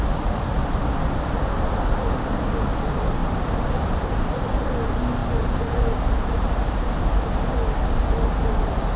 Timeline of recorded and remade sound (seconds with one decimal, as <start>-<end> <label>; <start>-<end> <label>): 0.0-3.2 recorded; 3.2-4.2 remade; 4.2-5.2 recorded; 5.2-6.9 remade; 6.9-9.0 recorded